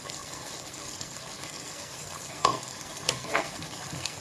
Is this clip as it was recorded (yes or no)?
no